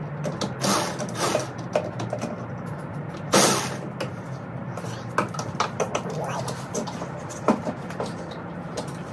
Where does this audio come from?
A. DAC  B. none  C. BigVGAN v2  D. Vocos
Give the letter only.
B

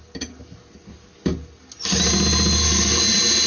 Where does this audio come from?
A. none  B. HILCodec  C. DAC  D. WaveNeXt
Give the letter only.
A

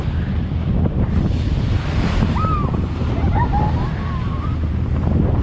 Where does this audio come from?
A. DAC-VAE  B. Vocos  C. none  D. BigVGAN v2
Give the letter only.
C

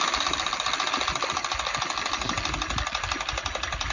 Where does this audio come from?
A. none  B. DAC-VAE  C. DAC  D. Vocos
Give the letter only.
A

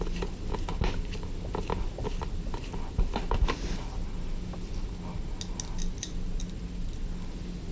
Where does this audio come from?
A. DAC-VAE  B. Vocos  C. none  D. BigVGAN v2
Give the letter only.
C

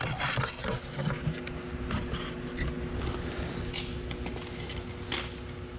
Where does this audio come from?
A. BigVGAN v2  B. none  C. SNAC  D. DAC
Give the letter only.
B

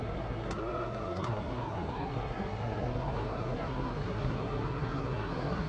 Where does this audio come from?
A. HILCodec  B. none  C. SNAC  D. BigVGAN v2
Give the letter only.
C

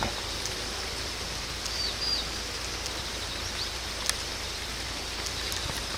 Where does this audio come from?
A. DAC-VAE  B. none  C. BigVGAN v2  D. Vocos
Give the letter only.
C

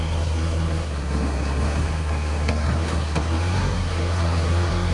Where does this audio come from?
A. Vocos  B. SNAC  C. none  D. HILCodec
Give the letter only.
B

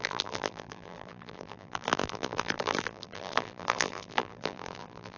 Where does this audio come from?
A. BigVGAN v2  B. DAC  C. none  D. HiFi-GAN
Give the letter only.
A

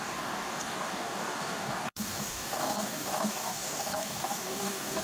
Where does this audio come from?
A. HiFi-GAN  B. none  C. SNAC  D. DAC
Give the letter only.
D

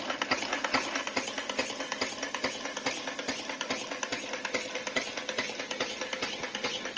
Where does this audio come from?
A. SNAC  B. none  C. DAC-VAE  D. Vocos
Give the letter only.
B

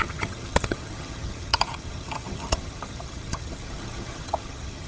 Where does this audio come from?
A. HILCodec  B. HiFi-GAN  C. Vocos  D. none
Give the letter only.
B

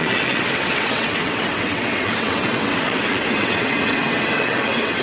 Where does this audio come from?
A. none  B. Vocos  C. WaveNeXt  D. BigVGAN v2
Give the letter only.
C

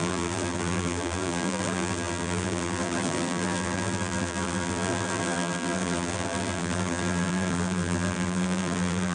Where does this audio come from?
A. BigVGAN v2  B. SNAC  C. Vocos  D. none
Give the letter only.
A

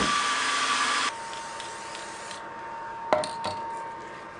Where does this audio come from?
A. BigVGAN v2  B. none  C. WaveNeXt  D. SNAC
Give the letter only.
B